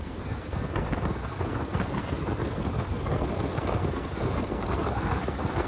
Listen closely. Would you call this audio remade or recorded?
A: remade